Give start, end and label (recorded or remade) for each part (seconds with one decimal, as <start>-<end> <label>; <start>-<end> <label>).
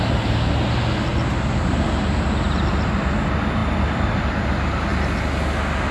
0.0-5.9 recorded